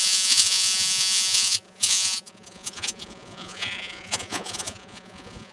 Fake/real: fake